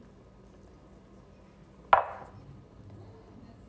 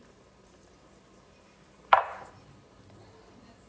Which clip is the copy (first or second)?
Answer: second